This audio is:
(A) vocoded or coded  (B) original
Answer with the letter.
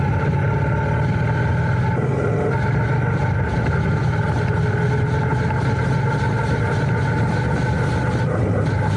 B